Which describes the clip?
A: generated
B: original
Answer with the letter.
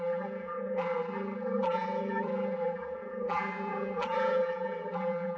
A